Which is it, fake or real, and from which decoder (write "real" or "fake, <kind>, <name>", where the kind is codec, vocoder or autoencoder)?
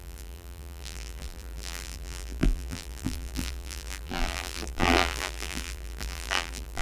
fake, vocoder, BigVGAN v2